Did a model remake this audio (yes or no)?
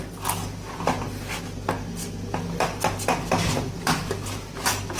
yes